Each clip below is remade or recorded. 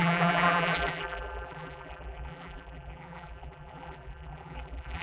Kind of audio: remade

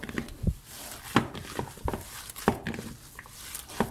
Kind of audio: recorded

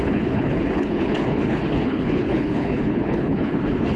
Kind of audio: remade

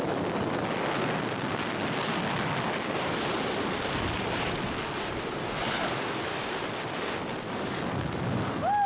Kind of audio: recorded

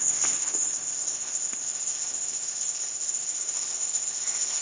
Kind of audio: remade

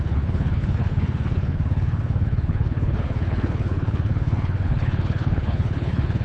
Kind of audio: remade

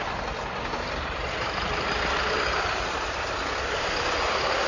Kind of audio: remade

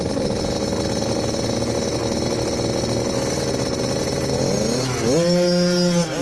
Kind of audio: recorded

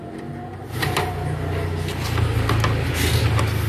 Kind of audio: recorded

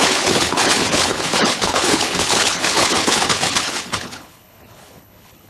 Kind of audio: remade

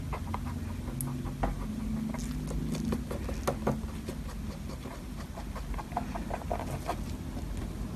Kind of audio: recorded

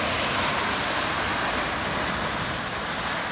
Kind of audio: recorded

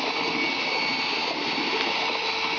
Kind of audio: recorded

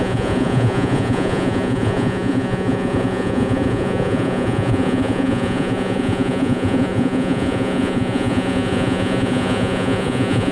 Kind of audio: remade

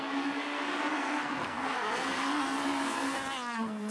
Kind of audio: remade